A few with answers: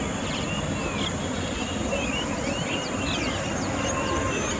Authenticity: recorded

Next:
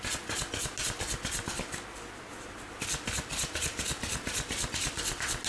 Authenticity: recorded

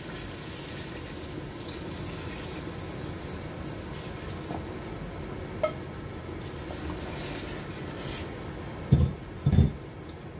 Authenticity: recorded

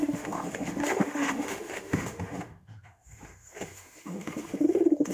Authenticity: remade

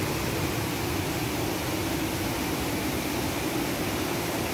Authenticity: recorded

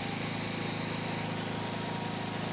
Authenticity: recorded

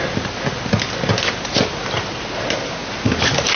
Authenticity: recorded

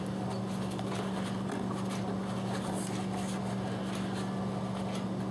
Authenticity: recorded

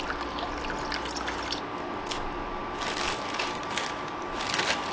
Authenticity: recorded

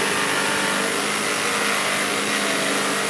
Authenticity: recorded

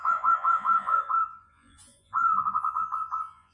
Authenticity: remade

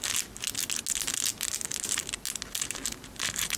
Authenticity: recorded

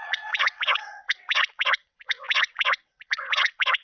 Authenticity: remade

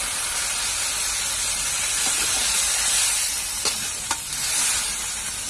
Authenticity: recorded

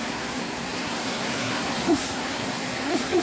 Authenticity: remade